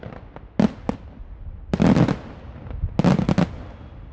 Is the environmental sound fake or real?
real